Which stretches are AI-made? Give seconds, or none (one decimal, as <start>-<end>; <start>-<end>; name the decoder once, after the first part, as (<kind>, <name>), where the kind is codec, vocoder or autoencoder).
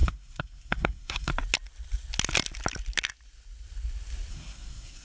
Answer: 0.0-1.3 (codec, SNAC); 4.3-5.0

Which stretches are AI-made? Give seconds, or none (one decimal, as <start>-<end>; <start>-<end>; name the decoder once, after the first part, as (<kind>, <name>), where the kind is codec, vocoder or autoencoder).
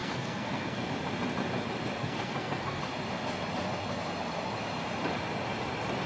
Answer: 0.0-0.9 (codec, SNAC); 2.0-2.8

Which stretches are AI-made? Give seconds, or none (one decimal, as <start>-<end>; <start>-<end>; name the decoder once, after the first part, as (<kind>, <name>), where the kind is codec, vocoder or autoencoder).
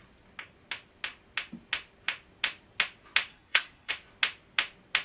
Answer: 3.3-3.9 (codec, SNAC)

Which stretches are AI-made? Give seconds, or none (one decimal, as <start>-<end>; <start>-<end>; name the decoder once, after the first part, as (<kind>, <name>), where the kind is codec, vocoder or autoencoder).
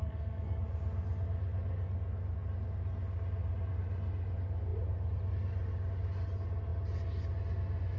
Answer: 0.0-0.6 (codec, SNAC)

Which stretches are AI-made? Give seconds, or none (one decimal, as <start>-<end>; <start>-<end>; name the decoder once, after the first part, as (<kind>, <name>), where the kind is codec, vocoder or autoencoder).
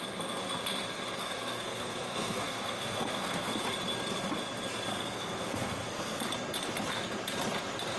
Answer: 1.2-3.6 (codec, SNAC); 4.9-6.2